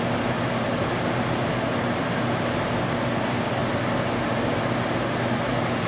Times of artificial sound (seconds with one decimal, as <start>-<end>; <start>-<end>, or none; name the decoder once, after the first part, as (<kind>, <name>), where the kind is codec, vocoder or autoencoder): none

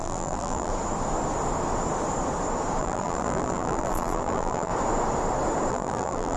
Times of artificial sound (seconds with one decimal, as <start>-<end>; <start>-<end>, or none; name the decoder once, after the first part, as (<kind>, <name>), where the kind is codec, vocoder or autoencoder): 0.0-0.7 (vocoder, BigVGAN v2); 2.8-4.7; 5.7-6.4